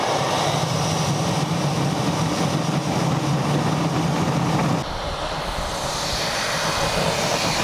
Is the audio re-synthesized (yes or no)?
no